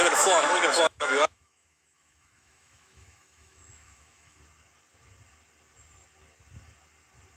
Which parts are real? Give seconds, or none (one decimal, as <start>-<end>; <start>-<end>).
4.4-7.4